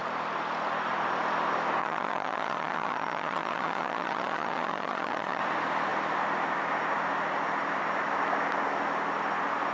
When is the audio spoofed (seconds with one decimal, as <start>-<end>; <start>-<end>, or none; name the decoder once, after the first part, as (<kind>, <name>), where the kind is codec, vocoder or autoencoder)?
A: 1.8-5.4 (vocoder, HiFi-GAN)